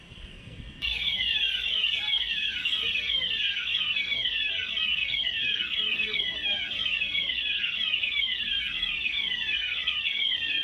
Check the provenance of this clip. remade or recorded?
remade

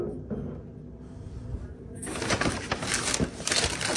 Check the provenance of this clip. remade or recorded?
recorded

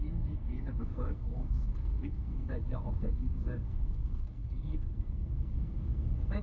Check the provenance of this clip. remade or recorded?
remade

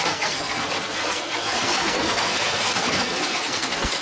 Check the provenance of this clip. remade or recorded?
remade